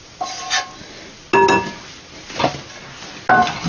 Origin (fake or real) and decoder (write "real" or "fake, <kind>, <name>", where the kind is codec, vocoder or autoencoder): real